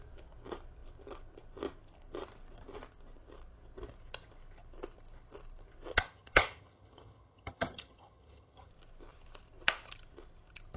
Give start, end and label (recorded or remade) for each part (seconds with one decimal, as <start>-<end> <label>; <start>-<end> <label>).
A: 0.0-5.9 recorded; 5.9-8.7 remade; 8.7-10.8 recorded